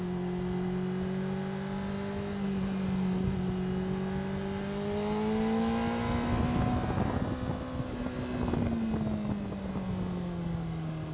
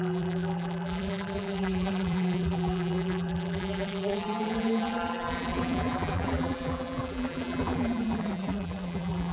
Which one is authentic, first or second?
first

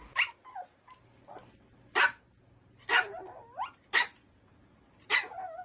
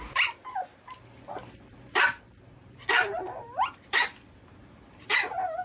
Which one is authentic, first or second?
first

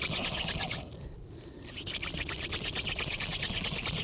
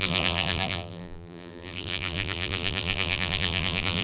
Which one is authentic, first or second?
first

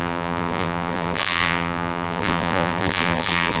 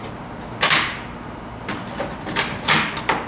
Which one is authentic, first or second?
second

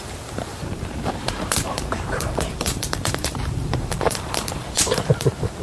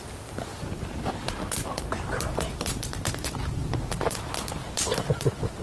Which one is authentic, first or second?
second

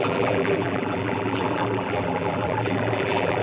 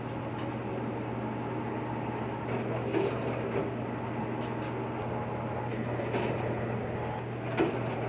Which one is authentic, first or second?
second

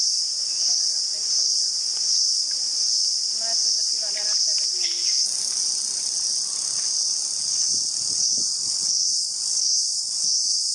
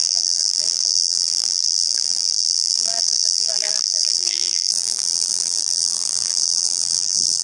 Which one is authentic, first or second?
first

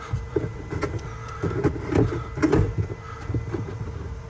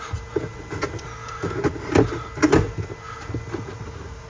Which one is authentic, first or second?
second